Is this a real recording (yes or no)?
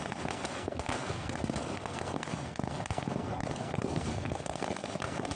no